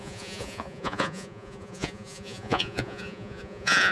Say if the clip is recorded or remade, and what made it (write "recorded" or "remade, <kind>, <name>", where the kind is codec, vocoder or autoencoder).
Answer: remade, vocoder, Vocos